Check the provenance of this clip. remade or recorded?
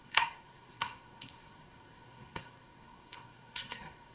remade